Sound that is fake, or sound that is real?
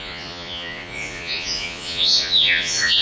fake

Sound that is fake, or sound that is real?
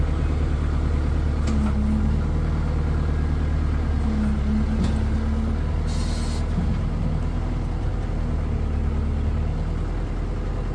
real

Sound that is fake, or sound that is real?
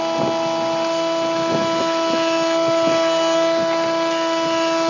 real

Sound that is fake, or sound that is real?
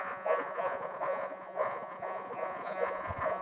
fake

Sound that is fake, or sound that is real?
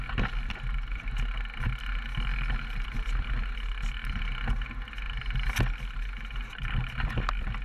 real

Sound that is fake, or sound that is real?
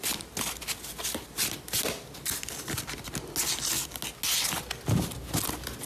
real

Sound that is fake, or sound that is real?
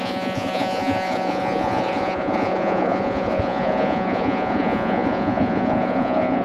fake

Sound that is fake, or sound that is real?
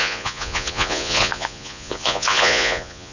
fake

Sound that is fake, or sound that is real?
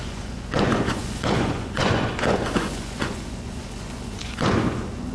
fake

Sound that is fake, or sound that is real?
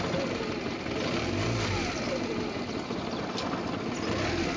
real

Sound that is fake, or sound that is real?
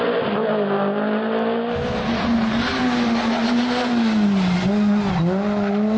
real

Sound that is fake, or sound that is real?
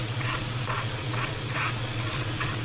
fake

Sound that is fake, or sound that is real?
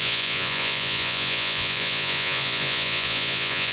fake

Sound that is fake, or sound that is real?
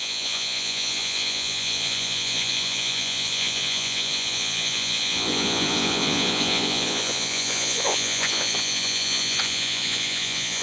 fake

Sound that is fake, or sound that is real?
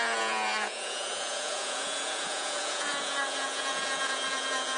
fake